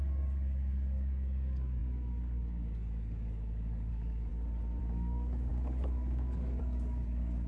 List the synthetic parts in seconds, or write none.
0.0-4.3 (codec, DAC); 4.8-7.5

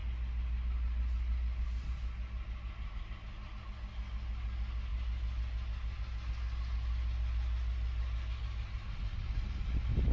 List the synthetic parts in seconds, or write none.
none

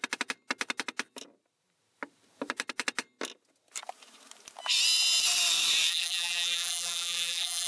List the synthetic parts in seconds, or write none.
5.9-7.7 (vocoder, BigVGAN v2)